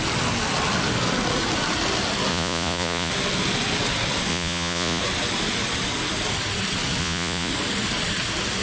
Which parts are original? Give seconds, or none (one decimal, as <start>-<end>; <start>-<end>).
0.0-2.3; 3.1-4.3; 5.0-7.0; 7.5-8.6